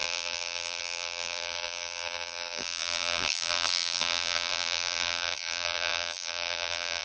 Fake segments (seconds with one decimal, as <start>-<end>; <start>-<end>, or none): 0.0-7.0